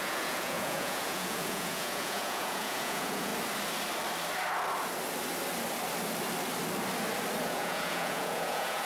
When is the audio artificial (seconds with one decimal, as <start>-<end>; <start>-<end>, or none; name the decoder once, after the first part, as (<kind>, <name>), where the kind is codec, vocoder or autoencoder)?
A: 0.0-3.3 (vocoder, Vocos); 7.4-8.9